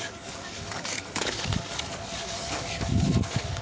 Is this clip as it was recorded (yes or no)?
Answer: no